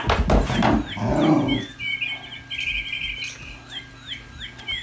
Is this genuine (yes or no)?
yes